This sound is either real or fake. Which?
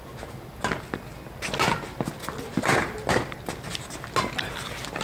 real